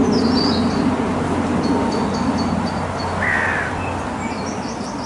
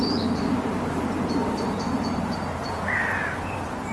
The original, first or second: first